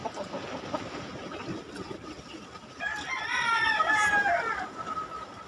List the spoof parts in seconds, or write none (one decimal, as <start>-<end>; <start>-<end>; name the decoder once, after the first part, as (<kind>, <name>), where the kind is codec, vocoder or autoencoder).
none